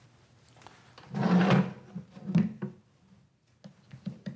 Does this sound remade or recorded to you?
recorded